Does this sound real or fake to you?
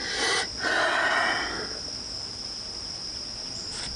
real